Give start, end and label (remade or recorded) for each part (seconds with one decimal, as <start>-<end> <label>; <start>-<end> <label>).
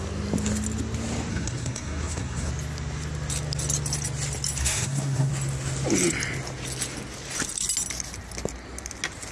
0.0-1.3 recorded; 1.3-2.5 remade; 2.5-4.6 recorded; 4.6-5.3 remade; 5.3-9.3 recorded